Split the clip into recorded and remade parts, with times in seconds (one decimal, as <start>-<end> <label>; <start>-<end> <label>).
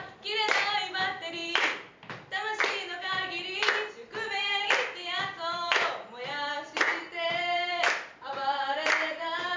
0.0-4.4 recorded; 4.4-5.9 remade; 5.9-6.9 recorded; 6.9-9.6 remade